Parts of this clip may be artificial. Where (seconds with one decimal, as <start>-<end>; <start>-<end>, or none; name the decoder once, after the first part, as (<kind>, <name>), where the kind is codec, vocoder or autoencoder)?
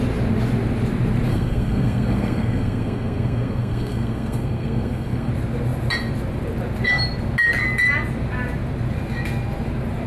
1.3-5.3 (codec, SNAC)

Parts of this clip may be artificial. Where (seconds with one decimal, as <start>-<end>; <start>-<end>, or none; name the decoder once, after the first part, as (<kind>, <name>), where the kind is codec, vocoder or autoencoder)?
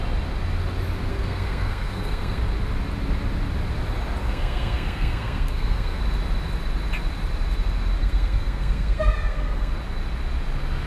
1.1-2.4 (codec, SNAC); 4.2-6.0; 8.0-9.7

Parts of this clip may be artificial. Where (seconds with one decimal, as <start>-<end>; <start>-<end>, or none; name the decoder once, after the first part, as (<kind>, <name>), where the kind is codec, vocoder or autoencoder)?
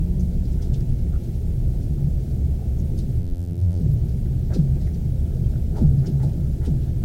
3.2-3.8 (vocoder, BigVGAN v2)